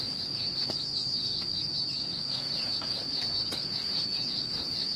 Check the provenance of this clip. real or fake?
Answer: fake